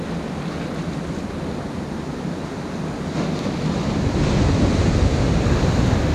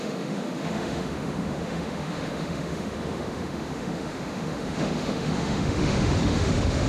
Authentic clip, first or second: first